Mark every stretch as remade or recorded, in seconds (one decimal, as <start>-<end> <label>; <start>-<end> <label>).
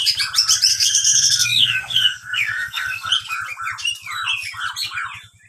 0.0-0.7 recorded; 0.7-3.1 remade; 3.1-5.5 recorded